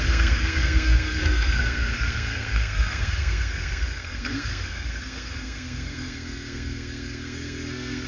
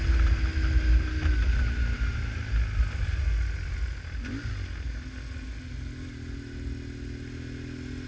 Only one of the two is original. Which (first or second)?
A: second